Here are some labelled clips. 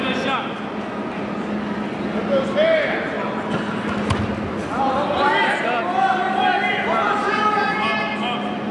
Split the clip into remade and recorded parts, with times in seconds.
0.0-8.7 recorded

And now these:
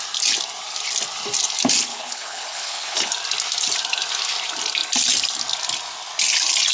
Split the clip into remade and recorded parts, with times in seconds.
0.0-1.9 recorded; 1.9-3.1 remade; 3.1-6.7 recorded

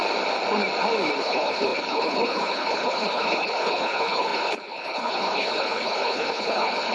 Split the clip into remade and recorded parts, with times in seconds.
0.0-1.2 recorded; 1.2-6.9 remade

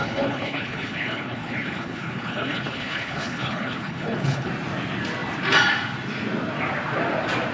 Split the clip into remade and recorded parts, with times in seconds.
0.0-4.5 remade; 4.5-7.5 recorded